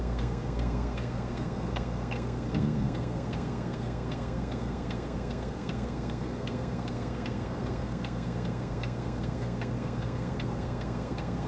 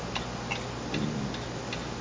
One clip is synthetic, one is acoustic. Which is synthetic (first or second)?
first